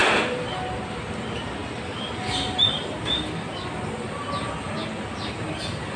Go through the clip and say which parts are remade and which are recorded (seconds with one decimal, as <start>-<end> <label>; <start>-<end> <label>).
0.0-6.0 recorded